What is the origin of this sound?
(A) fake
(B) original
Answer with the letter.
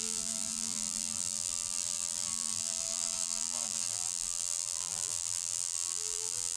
A